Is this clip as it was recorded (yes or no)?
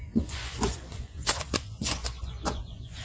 no